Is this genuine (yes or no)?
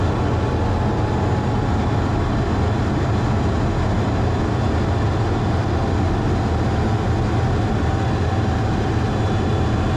yes